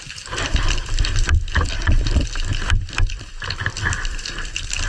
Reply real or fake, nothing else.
fake